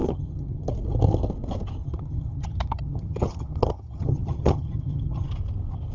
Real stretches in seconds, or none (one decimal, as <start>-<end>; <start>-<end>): 0.7-1.8; 5.3-5.9